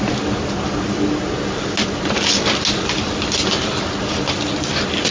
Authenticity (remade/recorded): recorded